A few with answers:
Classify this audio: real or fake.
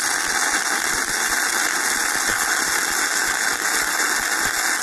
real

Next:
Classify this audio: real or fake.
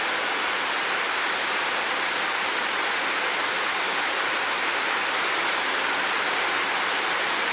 fake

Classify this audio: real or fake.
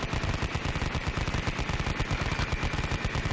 real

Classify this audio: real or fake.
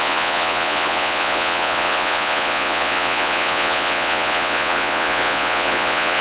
fake